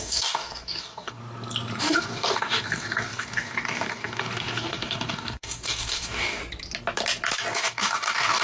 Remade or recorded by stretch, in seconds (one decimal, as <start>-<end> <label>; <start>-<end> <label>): 0.0-1.2 remade; 1.2-1.8 recorded; 1.8-6.4 remade; 6.4-7.5 recorded; 7.5-8.4 remade